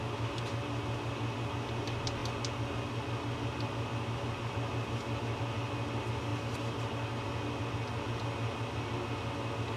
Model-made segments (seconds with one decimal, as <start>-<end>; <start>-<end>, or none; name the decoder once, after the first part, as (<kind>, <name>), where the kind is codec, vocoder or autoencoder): none